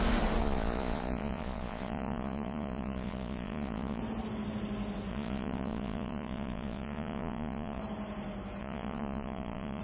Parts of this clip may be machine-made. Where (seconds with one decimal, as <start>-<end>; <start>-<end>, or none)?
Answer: 0.4-4.0; 5.1-7.8; 8.6-9.8